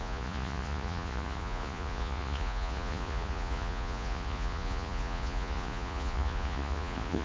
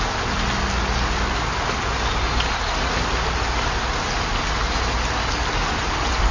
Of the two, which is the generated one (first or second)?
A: first